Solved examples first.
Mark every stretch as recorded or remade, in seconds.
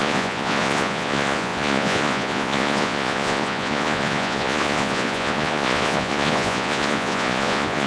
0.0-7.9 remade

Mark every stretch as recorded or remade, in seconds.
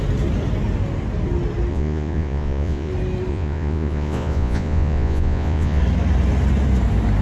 0.0-1.7 recorded; 1.7-2.9 remade; 2.9-3.3 recorded; 3.3-5.8 remade; 5.8-7.2 recorded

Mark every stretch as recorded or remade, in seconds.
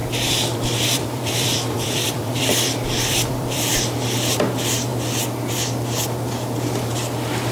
0.0-4.5 remade; 4.5-7.5 recorded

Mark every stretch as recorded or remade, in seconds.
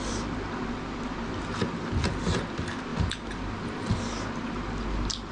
0.0-5.3 recorded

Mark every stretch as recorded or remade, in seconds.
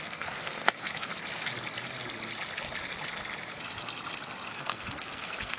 0.0-1.1 remade; 1.1-4.5 recorded; 4.5-5.6 remade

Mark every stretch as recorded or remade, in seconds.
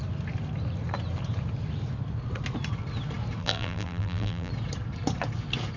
0.0-3.4 recorded; 3.4-4.5 remade; 4.5-5.8 recorded